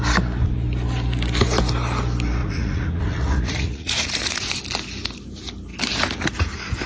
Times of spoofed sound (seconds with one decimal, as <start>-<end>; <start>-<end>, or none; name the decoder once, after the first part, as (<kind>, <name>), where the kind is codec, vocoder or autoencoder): 2.4-4.5 (vocoder, Vocos)